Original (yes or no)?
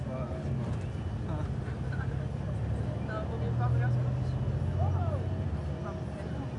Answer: yes